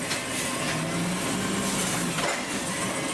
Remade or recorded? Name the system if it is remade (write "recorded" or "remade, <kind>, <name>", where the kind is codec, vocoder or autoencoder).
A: recorded